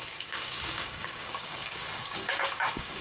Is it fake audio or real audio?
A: fake